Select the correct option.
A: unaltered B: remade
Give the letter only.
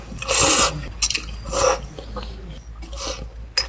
A